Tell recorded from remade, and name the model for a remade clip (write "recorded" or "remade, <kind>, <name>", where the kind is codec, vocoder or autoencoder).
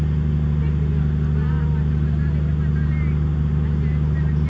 recorded